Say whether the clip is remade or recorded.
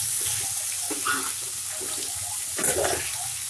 recorded